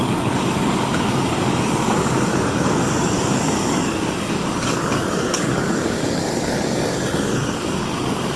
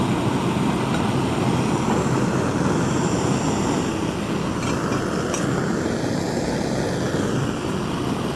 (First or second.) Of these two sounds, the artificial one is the first